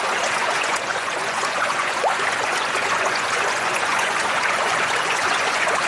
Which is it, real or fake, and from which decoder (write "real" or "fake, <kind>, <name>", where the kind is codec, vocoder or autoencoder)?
fake, vocoder, Vocos